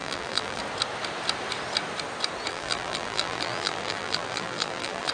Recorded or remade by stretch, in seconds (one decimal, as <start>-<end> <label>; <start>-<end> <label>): 0.0-0.6 remade; 0.6-2.5 recorded; 2.5-5.1 remade